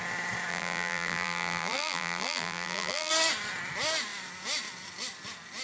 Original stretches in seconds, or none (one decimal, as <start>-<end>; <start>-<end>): 0.0-0.5; 3.1-5.6